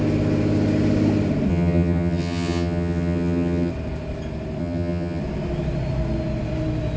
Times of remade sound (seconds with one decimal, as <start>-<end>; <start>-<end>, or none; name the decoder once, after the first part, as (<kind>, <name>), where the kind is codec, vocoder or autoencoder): 1.5-3.7 (vocoder, HiFi-GAN); 4.6-5.2